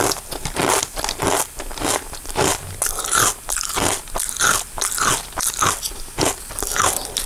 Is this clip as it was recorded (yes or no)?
yes